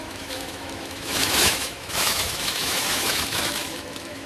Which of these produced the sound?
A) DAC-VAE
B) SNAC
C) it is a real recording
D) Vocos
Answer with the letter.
A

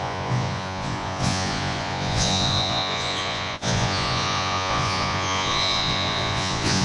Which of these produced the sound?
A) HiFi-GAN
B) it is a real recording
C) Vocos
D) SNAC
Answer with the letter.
C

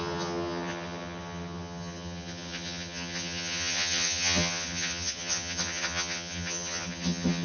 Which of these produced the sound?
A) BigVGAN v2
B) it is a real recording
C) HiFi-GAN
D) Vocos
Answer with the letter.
C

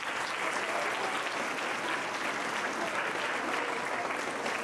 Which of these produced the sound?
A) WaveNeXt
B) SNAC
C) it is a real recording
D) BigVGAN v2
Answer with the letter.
C